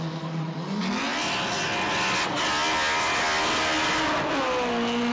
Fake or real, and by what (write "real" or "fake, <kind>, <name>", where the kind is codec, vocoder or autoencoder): real